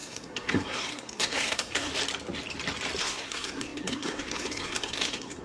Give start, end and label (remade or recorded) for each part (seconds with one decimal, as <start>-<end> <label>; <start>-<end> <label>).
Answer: 0.0-1.9 remade; 1.9-3.0 recorded; 3.0-5.4 remade